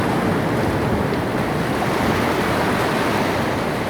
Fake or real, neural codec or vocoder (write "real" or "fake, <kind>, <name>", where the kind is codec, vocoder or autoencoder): real